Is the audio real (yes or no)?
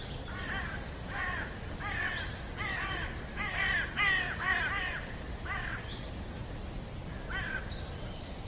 yes